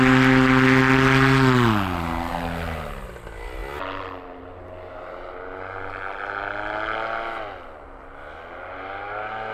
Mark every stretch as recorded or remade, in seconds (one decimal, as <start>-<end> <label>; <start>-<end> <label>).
0.0-9.5 recorded